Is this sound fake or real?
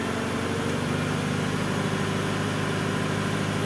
real